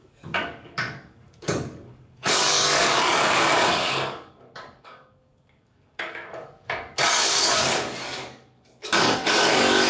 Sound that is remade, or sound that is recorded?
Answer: remade